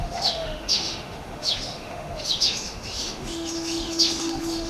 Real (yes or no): no